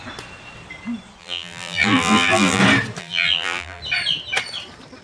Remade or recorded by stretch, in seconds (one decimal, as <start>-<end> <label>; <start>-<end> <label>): 0.0-1.2 recorded; 1.2-2.6 remade; 2.6-3.0 recorded; 3.0-3.8 remade; 3.8-5.0 recorded